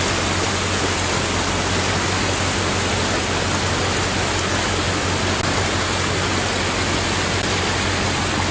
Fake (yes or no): no